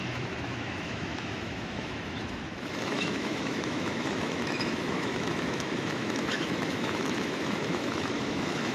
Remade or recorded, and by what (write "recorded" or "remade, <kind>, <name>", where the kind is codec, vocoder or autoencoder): remade, autoencoder, DAC-VAE